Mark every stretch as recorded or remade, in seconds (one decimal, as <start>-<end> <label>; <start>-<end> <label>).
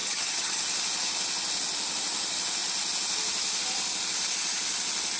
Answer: 0.0-0.6 remade; 0.6-5.2 recorded